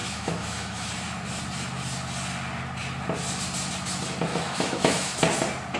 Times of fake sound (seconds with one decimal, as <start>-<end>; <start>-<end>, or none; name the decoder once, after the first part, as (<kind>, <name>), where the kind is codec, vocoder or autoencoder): 0.0-0.9 (autoencoder, DAC-VAE); 4.3-5.2